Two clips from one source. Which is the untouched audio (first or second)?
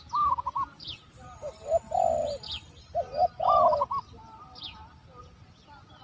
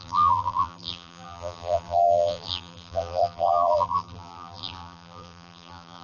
first